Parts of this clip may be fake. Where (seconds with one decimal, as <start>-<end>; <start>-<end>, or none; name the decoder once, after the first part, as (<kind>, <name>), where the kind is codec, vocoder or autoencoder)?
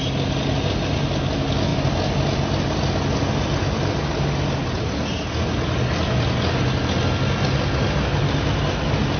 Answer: none